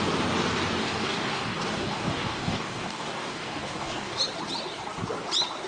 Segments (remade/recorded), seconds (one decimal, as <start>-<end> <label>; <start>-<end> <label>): 0.0-0.8 recorded; 0.8-4.2 remade; 4.2-5.7 recorded